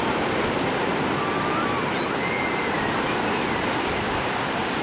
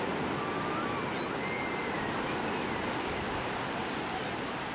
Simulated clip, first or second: first